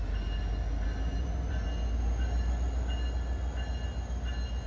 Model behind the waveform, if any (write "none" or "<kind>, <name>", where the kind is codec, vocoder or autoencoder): none